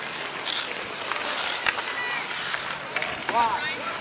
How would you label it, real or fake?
real